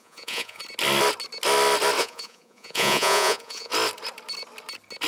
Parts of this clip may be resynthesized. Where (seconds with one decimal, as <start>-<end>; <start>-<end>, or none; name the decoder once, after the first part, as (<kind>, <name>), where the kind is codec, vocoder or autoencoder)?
0.0-0.6 (vocoder, Vocos); 2.0-3.7